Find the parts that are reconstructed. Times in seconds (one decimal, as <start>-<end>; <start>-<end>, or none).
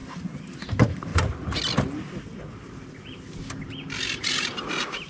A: 0.0-1.1; 3.9-5.1